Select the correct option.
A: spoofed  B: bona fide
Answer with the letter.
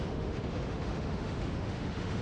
A